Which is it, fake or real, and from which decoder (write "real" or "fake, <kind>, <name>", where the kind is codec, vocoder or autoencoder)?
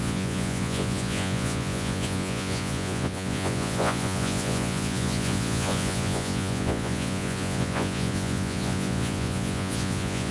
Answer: fake, vocoder, Vocos